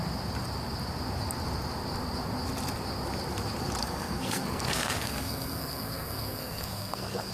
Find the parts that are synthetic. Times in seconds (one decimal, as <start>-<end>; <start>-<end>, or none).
3.8-7.3